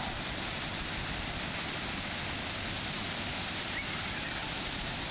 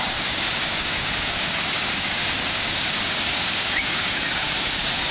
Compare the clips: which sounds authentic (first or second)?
first